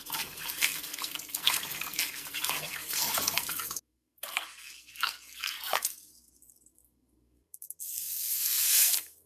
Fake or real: fake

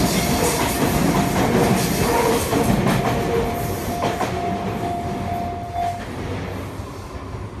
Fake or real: real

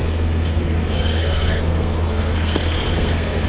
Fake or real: fake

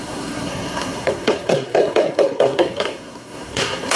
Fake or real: fake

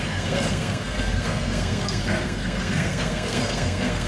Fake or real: fake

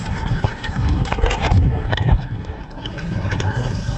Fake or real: fake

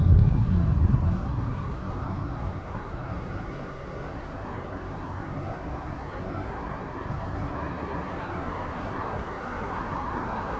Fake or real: fake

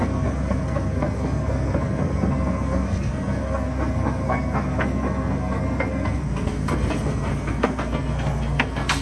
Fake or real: fake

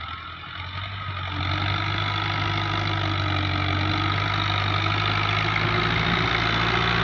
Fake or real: real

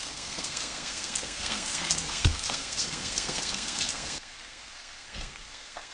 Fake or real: fake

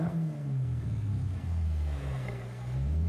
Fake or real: fake